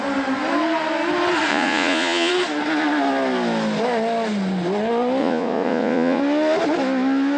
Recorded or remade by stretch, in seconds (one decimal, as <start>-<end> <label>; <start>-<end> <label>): 0.0-1.5 recorded; 1.5-2.3 remade; 2.3-5.2 recorded; 5.2-6.2 remade; 6.2-7.4 recorded